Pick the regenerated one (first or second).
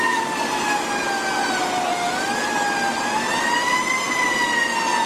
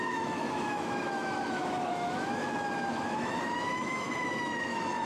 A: second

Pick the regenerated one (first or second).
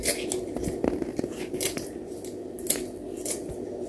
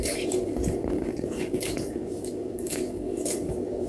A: second